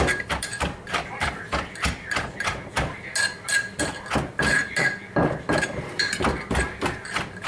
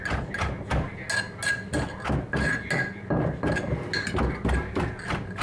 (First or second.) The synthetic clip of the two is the first